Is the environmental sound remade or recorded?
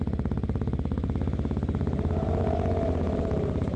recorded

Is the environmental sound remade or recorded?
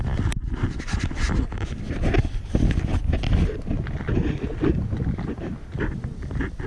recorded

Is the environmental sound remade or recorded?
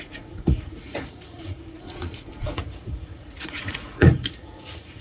remade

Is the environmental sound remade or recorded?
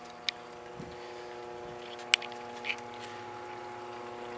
recorded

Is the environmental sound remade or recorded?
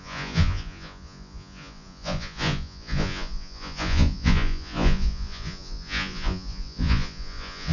remade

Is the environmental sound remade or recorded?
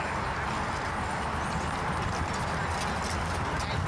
recorded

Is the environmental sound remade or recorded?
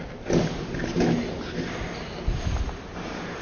recorded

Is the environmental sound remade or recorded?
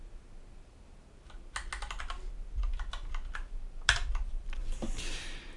recorded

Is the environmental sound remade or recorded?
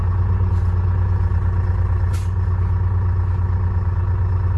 recorded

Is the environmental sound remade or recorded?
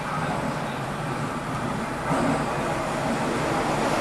recorded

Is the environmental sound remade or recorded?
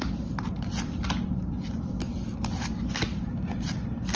recorded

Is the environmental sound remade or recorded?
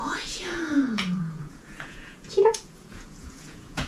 remade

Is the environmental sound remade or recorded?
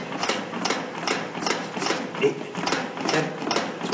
recorded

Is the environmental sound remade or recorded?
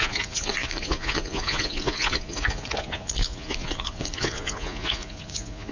remade